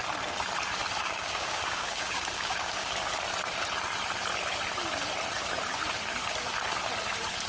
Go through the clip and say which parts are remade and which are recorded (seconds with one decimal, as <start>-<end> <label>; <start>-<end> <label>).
0.0-1.0 recorded; 1.0-2.9 remade; 2.9-7.5 recorded